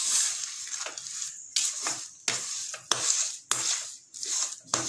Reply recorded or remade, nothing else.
recorded